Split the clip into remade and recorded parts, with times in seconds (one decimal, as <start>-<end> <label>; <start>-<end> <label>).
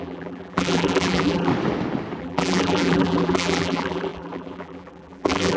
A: 0.0-1.5 remade; 1.5-2.2 recorded; 2.2-5.6 remade